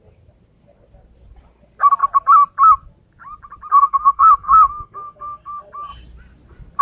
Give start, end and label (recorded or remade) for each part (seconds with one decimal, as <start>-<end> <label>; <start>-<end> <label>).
0.0-3.7 recorded; 3.7-5.5 remade; 5.5-6.8 recorded